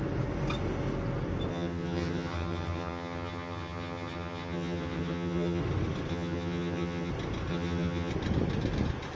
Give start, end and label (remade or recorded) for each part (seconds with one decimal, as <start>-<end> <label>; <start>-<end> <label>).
0.0-1.5 recorded; 1.5-5.6 remade; 5.6-6.1 recorded; 6.1-7.1 remade; 7.1-7.5 recorded; 7.5-8.1 remade; 8.1-9.1 recorded